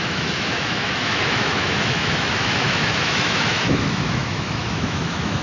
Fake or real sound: fake